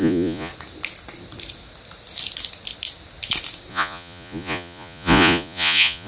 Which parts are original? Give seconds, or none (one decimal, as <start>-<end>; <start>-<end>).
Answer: 0.5-3.7

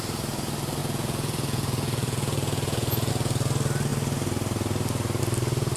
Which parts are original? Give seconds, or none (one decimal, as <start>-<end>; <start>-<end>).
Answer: 0.0-0.8; 3.1-5.8

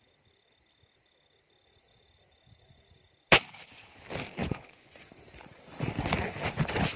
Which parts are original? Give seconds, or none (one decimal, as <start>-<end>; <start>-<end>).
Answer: 0.0-4.4; 5.1-7.0

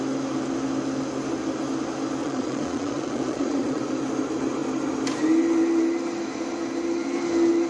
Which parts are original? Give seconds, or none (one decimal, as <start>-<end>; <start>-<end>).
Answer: 0.0-2.2; 3.8-7.7

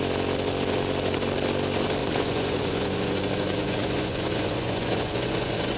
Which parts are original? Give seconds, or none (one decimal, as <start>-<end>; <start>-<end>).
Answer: 0.0-2.0

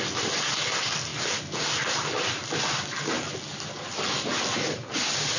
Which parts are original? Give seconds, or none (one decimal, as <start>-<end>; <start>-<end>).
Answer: 0.0-5.4

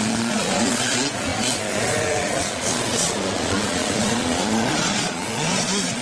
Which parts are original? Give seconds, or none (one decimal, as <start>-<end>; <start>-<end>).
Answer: none